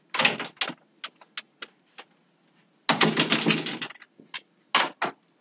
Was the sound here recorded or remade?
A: recorded